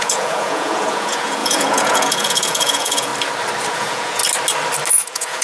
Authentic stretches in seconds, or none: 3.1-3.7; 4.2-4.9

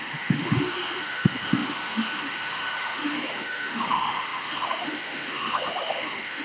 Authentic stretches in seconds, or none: none

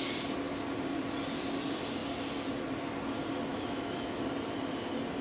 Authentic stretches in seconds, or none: 0.0-3.5; 4.2-5.2

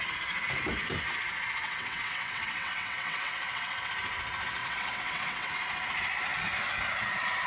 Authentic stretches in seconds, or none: 0.0-1.6; 3.9-4.6; 5.5-7.5

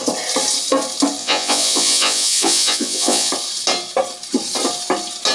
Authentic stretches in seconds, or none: 0.0-1.2; 3.3-5.3